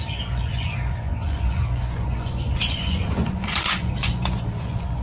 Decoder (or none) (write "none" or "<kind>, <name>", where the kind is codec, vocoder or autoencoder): vocoder, Vocos